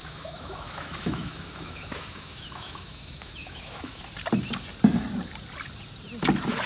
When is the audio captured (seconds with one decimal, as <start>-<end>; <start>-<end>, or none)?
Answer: 4.0-6.7